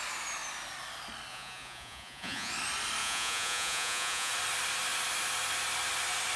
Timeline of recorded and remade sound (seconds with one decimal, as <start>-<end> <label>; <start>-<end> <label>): 0.0-1.3 recorded; 1.3-2.5 remade; 2.5-3.0 recorded; 3.0-4.3 remade; 4.3-6.4 recorded